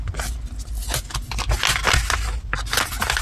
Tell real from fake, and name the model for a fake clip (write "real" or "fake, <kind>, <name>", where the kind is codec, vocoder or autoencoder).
real